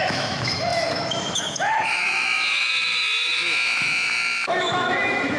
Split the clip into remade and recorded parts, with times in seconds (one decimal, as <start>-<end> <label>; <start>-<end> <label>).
0.0-5.4 remade